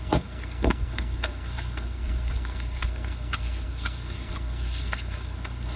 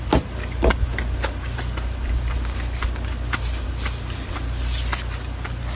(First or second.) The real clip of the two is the second